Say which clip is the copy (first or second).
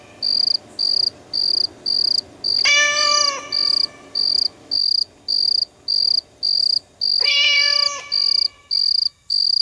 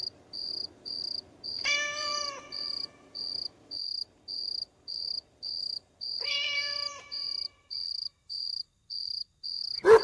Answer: second